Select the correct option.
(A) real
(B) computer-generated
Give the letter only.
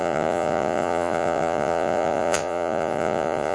B